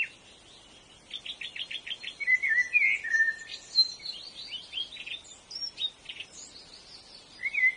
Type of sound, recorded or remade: recorded